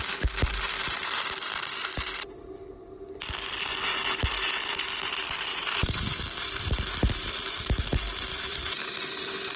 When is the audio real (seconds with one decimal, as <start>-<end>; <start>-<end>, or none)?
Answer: 0.0-5.5; 6.2-8.3; 8.9-9.6